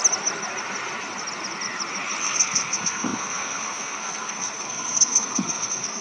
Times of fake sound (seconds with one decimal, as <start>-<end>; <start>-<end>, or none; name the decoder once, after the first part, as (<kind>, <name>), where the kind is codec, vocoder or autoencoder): 2.2-6.0 (codec, SNAC)